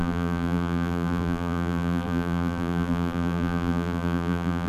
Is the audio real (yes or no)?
no